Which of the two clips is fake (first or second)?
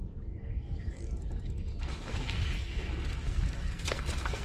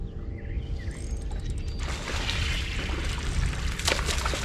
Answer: first